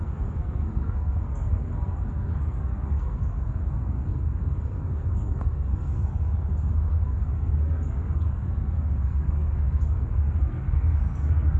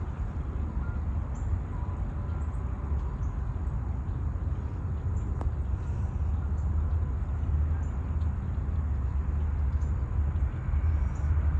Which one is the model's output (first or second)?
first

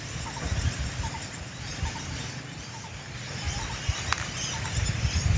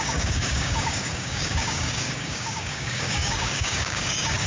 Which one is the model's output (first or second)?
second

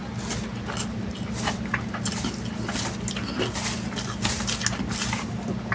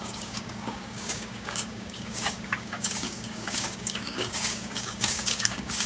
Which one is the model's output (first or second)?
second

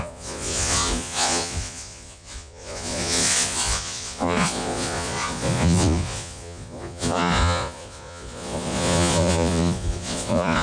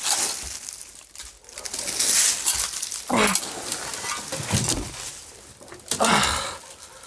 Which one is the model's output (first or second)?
first